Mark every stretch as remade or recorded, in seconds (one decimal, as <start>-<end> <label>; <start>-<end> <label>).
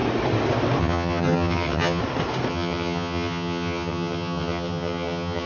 0.0-0.8 recorded; 0.8-2.0 remade; 2.0-2.5 recorded; 2.5-5.5 remade